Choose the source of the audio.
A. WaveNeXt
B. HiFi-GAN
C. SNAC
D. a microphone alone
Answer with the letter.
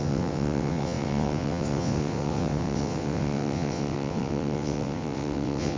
A